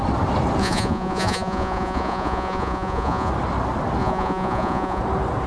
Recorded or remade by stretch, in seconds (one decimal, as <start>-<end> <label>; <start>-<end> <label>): 0.0-0.6 recorded; 0.6-3.3 remade; 3.3-4.0 recorded; 4.0-5.0 remade; 5.0-5.5 recorded